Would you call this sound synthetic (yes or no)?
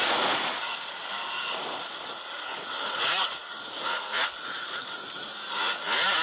yes